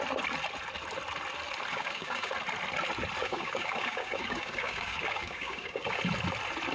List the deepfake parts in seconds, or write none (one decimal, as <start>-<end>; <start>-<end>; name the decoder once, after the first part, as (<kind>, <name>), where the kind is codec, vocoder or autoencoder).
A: 1.7-2.3 (codec, DAC); 3.2-6.0